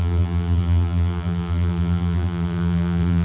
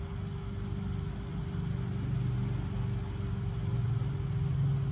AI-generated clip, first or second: first